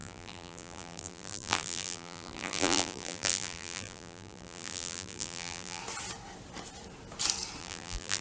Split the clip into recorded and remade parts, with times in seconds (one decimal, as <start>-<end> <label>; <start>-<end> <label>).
0.0-5.8 remade; 5.8-7.6 recorded; 7.6-8.2 remade